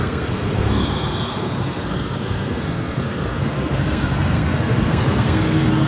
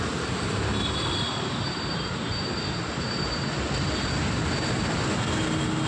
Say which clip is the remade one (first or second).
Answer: first